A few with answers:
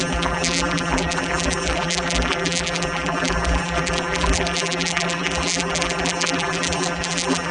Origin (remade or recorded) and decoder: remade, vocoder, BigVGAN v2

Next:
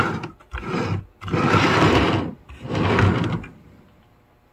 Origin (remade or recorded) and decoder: recorded